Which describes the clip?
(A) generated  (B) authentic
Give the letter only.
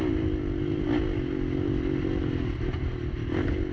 B